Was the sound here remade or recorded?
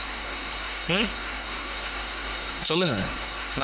remade